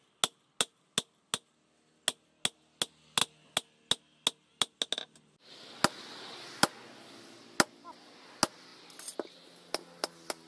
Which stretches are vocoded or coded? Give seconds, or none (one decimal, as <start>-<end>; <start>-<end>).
none